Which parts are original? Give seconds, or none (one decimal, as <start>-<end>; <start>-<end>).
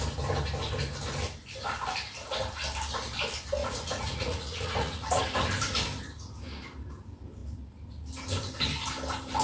0.0-3.6; 5.2-9.4